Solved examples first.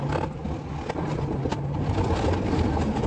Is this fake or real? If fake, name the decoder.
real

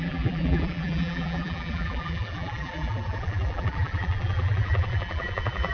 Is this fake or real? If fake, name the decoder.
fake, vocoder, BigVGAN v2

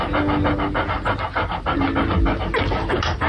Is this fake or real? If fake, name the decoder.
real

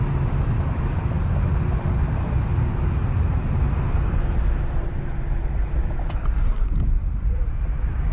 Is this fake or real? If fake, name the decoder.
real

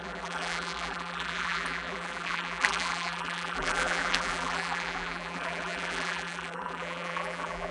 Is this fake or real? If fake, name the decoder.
fake, vocoder, BigVGAN v2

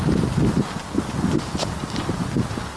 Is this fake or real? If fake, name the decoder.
real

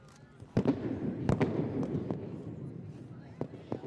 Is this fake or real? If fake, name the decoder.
real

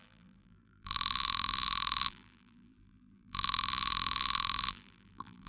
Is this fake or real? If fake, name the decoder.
fake, vocoder, BigVGAN v2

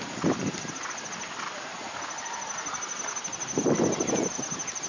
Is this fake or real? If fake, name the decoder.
real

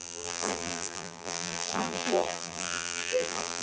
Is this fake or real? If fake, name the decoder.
fake, vocoder, BigVGAN v2